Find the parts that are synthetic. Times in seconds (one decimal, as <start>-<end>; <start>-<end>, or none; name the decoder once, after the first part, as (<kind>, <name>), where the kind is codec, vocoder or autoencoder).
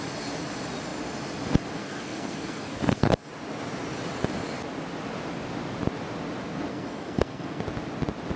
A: 1.8-3.3 (codec, SNAC); 6.7-7.6